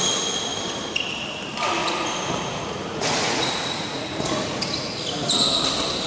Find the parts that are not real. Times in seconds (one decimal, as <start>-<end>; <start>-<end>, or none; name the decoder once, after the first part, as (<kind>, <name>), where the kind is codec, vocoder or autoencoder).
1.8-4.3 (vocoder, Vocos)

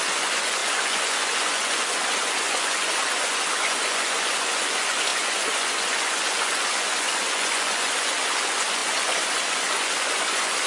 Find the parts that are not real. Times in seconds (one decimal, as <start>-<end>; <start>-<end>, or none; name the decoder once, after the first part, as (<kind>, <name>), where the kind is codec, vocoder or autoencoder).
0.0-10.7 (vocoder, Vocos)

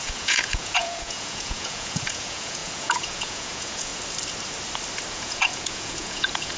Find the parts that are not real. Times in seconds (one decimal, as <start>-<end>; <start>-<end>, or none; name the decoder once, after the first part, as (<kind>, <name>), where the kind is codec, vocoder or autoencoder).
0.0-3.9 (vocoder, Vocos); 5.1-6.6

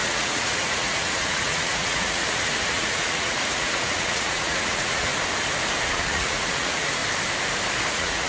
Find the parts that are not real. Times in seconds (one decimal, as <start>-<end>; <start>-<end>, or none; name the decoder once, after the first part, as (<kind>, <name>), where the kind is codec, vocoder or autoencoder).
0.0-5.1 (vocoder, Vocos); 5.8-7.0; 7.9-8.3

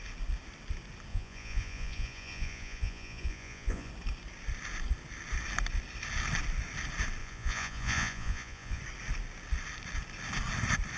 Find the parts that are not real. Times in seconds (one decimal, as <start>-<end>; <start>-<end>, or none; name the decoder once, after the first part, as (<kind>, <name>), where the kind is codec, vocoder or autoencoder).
1.1-3.9 (vocoder, Vocos); 7.2-8.8

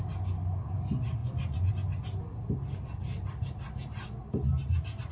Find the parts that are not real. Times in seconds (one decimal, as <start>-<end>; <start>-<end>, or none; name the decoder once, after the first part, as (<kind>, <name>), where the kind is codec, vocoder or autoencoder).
1.2-1.7 (vocoder, Vocos)